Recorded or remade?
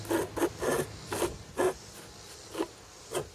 recorded